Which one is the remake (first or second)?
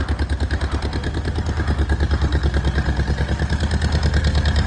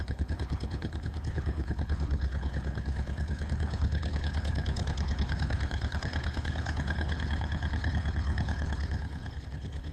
second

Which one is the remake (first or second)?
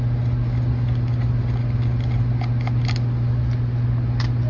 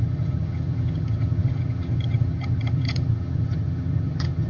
second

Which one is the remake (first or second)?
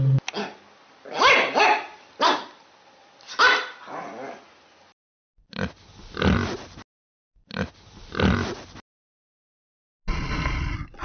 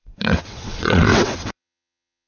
second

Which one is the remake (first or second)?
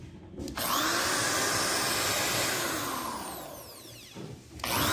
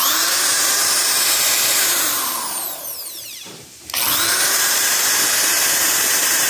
second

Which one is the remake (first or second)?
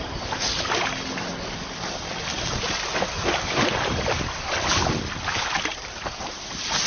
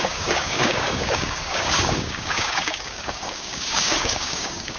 second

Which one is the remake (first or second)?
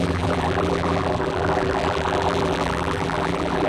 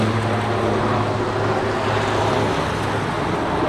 first